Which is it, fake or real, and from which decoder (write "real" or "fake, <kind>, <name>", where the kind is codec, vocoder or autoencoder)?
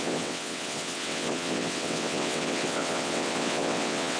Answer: fake, vocoder, WaveNeXt